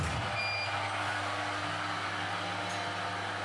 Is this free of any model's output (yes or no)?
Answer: yes